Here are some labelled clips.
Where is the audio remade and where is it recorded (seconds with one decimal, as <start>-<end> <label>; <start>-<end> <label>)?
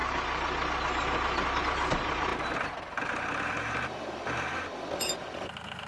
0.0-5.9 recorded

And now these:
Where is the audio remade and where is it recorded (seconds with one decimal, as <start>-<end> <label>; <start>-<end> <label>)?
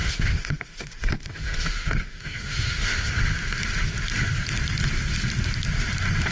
0.0-3.1 remade; 3.1-6.3 recorded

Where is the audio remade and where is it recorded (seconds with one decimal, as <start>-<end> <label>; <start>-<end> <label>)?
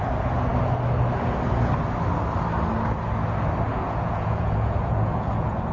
0.0-3.7 recorded; 3.7-5.7 remade